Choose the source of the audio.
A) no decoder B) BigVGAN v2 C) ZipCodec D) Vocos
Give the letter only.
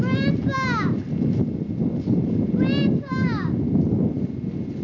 A